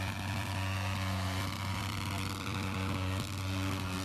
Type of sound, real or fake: fake